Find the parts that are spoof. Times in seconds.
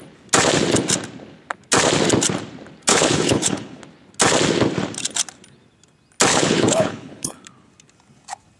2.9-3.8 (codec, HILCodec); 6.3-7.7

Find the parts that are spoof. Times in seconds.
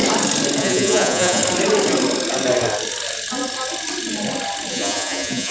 0.6-1.4 (vocoder, Vocos); 4.7-5.5